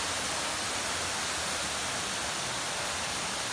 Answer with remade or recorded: recorded